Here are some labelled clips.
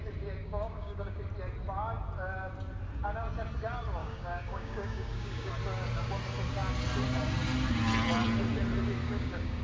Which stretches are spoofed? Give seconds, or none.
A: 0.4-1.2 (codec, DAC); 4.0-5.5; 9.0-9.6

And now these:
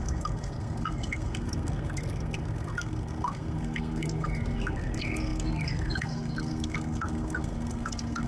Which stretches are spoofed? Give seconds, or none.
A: 0.0-8.3 (codec, SNAC)

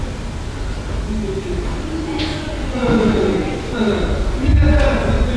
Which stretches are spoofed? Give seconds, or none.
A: 2.3-3.8 (vocoder, Vocos)

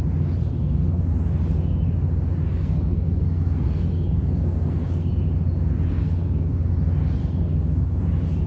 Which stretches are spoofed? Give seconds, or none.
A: 0.4-1.1 (codec, SNAC); 2.5-5.1; 5.9-6.7; 7.2-8.0

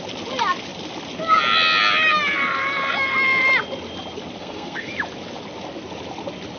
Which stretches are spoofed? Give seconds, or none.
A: 4.4-4.9 (codec, SNAC)

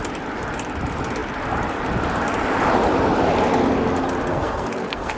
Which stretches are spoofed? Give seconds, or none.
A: 4.3-5.2 (codec, SNAC)

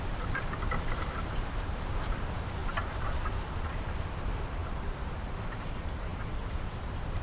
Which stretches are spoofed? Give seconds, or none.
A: 0.0-7.2 (vocoder, BigVGAN v2)

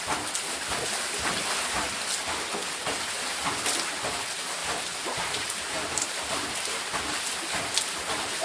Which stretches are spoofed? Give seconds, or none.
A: 4.6-6.1 (vocoder, BigVGAN v2)